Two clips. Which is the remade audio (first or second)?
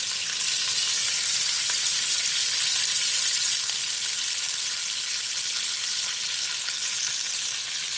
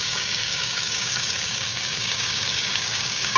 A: second